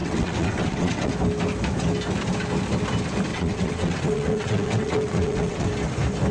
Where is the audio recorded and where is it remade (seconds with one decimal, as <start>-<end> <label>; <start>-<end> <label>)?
0.0-1.1 remade; 1.1-3.3 recorded; 3.3-5.7 remade; 5.7-6.3 recorded